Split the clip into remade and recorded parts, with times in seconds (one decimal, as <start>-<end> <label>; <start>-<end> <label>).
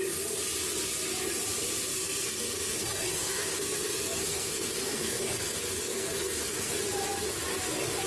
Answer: 0.0-1.9 recorded; 1.9-6.8 remade; 6.8-8.1 recorded